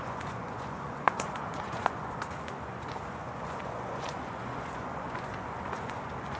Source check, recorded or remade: remade